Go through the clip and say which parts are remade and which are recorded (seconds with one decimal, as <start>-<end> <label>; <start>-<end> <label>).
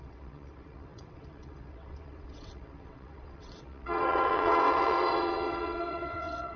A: 0.0-6.6 remade